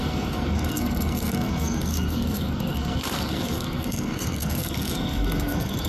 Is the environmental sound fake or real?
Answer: fake